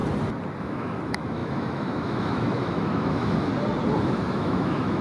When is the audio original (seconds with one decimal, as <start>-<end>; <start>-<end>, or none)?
0.0-0.6; 3.5-4.0